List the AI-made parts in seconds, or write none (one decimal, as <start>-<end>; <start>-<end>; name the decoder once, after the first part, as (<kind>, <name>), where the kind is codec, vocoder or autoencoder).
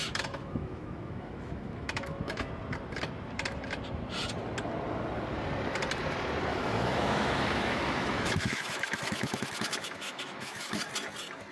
0.0-2.5 (autoencoder, DAC-VAE); 6.5-10.8